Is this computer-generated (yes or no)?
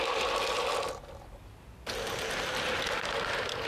no